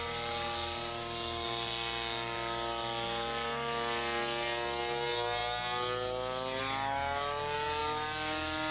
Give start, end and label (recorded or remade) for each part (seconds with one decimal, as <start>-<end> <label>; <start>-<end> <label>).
0.0-8.7 recorded